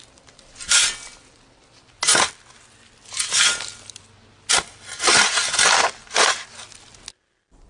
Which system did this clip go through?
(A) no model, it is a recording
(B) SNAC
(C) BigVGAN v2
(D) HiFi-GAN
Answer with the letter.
A